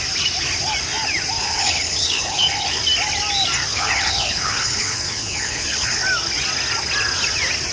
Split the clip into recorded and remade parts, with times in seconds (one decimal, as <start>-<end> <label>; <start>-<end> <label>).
0.0-1.4 recorded; 1.4-2.8 remade; 2.8-3.7 recorded; 3.7-6.0 remade; 6.0-7.7 recorded